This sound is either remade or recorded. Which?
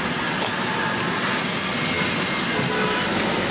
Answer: recorded